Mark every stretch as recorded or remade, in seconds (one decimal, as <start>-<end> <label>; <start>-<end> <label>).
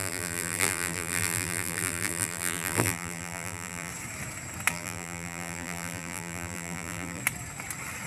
0.0-3.9 remade; 3.9-4.7 recorded; 4.7-7.2 remade; 7.2-8.1 recorded